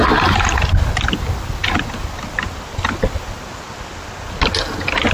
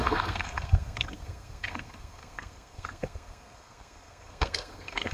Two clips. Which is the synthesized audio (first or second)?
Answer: second